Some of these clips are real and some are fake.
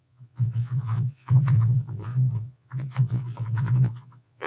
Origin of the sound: fake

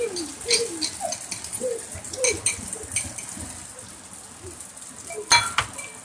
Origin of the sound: real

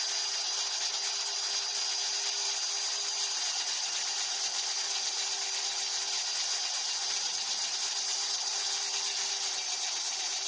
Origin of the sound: real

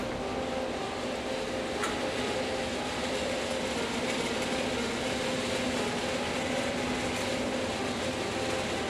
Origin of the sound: real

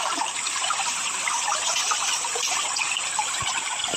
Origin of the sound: fake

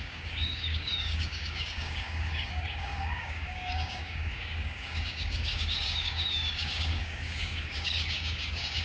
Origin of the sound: fake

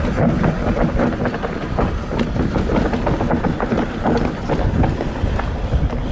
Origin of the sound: real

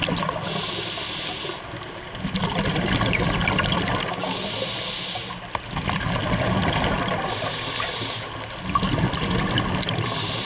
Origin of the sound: real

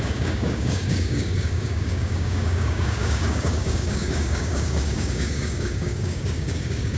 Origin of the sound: fake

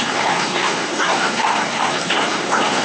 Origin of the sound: fake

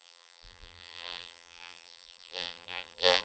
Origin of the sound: fake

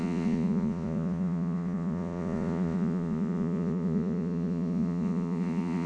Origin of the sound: fake